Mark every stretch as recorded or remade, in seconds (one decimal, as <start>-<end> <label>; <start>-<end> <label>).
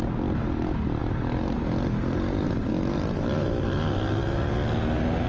0.0-5.3 recorded